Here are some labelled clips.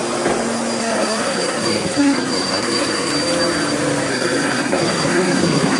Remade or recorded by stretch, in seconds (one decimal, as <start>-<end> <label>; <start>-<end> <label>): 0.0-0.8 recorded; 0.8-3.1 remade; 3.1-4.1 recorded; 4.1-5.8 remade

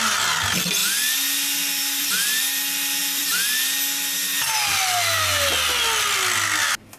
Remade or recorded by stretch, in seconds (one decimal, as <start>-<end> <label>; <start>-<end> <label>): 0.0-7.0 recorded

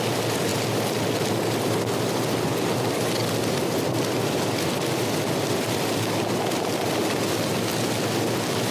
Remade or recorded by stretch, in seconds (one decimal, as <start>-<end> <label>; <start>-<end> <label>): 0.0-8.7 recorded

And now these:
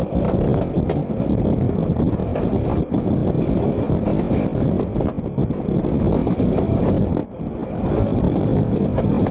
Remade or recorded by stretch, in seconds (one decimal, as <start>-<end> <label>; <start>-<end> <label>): 0.0-9.3 recorded